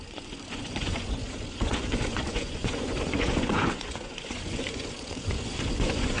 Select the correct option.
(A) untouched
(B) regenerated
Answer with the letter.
B